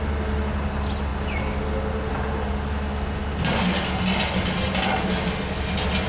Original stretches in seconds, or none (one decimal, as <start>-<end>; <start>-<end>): 0.0-6.1